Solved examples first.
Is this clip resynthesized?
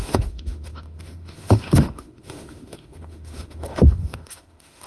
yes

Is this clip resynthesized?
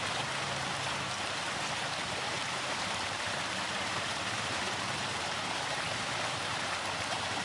yes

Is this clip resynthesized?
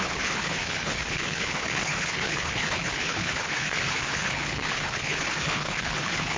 yes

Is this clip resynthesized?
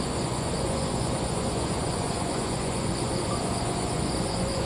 yes